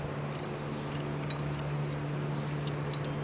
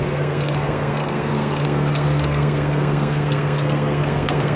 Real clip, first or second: first